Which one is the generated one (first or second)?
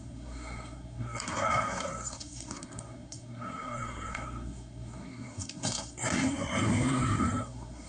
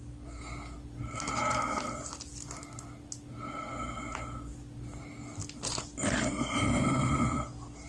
first